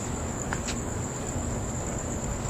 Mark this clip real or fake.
fake